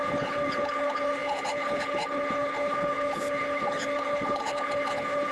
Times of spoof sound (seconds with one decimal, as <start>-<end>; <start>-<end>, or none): 0.0-5.3